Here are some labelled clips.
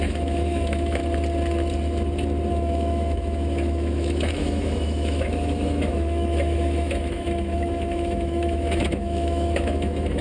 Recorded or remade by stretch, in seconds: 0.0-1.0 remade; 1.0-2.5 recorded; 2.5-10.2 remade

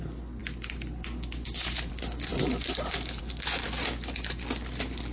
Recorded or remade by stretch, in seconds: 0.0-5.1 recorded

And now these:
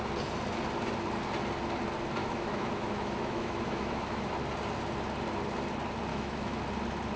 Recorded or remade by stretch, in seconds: 0.0-2.2 recorded; 2.2-4.3 remade; 4.3-6.1 recorded; 6.1-6.6 remade; 6.6-7.2 recorded